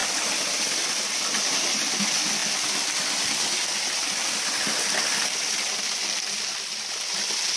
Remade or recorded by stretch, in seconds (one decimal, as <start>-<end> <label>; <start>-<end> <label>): 0.0-7.6 recorded